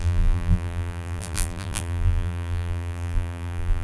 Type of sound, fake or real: fake